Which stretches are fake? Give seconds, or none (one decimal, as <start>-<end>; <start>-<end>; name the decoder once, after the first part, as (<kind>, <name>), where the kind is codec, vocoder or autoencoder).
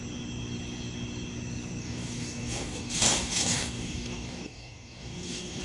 1.8-5.6 (codec, DAC)